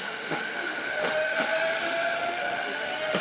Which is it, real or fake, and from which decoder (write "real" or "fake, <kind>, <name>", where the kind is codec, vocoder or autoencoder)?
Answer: fake, autoencoder, DAC-VAE